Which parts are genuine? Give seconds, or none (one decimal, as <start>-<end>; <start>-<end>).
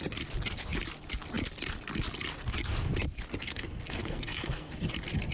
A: 0.0-3.4; 4.7-5.3